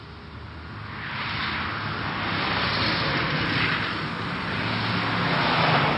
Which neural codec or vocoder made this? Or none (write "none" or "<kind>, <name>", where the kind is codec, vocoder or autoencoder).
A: none